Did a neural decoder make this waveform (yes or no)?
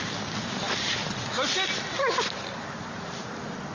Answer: no